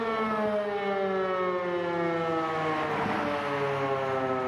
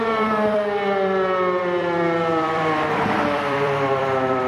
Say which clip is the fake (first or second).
second